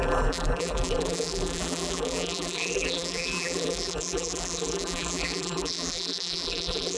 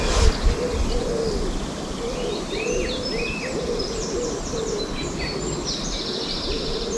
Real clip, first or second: second